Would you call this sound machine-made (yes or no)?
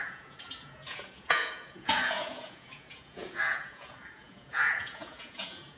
yes